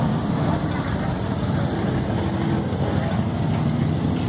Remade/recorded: recorded